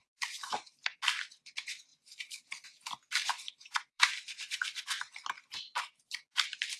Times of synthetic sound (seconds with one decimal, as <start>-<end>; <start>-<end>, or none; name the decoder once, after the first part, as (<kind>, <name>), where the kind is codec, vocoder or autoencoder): 0.0-1.0 (vocoder, BigVGAN v2); 1.9-5.0